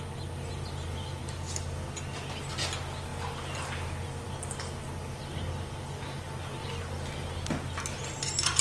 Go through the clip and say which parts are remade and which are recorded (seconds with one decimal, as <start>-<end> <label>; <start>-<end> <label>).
0.0-8.6 recorded